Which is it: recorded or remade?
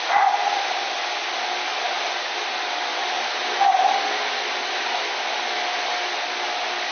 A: recorded